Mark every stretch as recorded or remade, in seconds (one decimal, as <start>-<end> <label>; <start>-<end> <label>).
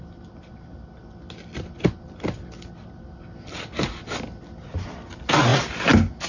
0.0-6.3 recorded